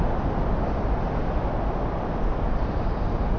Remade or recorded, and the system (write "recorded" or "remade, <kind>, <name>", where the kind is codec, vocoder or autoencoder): recorded